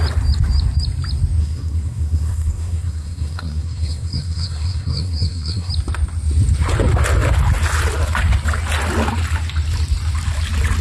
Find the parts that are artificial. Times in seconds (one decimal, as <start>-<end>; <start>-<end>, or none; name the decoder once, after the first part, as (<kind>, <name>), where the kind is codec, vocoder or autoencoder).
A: 1.4-5.7 (codec, SNAC)